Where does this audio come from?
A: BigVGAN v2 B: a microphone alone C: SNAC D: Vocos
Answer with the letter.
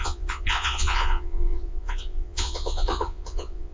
D